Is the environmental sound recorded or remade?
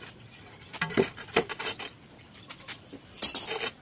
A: recorded